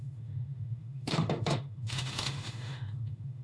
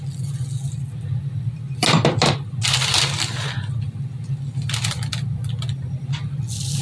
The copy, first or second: first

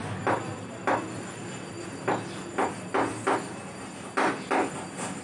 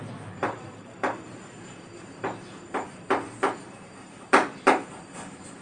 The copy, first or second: second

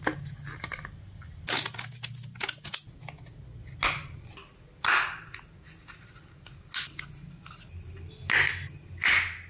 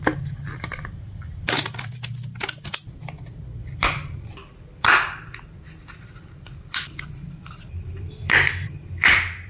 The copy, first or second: second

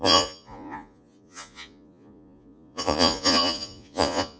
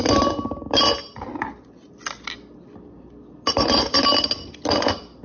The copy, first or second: first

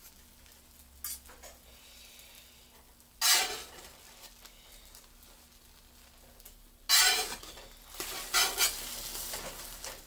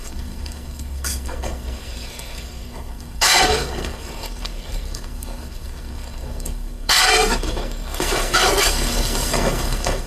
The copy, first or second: second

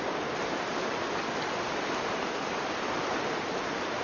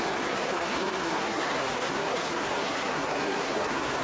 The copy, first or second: second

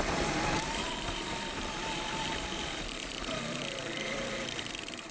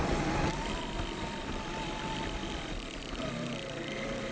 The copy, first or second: first